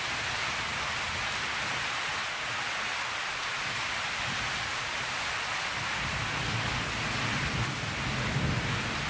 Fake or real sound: real